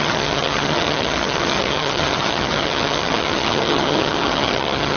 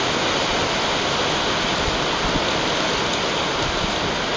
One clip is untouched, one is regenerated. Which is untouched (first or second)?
second